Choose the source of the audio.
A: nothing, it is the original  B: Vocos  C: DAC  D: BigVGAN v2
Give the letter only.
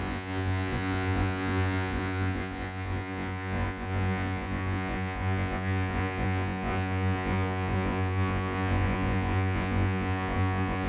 B